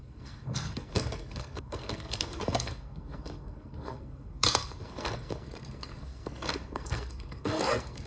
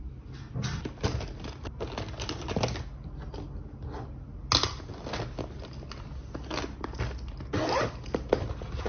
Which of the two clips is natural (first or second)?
second